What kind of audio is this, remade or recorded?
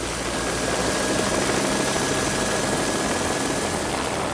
recorded